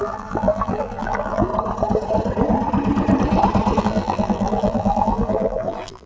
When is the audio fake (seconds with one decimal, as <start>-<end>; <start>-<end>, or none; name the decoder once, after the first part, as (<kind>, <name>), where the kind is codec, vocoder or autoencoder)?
0.0-1.5 (vocoder, BigVGAN v2); 3.8-6.1